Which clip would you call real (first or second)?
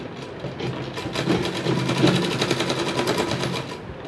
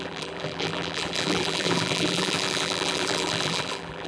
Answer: first